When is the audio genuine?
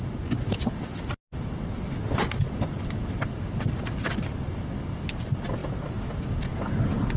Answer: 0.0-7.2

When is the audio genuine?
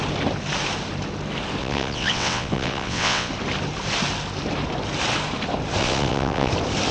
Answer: 0.0-1.6; 3.3-5.8; 6.5-6.9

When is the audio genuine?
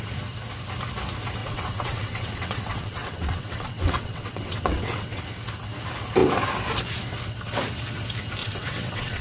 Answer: 0.0-1.4; 5.2-8.4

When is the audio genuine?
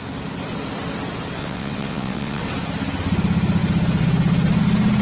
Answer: 0.0-1.4; 2.4-5.0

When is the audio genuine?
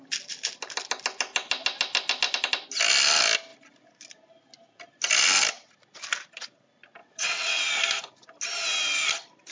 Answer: 0.0-7.0; 7.7-9.5